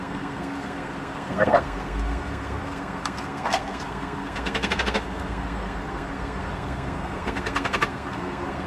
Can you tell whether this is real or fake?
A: fake